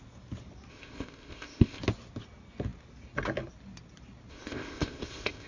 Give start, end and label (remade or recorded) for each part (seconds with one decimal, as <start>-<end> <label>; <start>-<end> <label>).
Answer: 0.0-0.7 recorded; 0.7-1.8 remade; 1.8-4.3 recorded; 4.3-5.5 remade